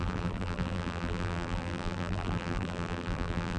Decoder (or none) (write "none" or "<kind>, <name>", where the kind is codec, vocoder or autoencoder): vocoder, BigVGAN v2